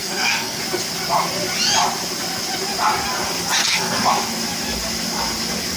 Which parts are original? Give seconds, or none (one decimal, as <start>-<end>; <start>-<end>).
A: 0.6-3.6; 4.1-5.8